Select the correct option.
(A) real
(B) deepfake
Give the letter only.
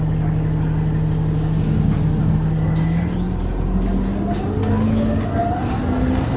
A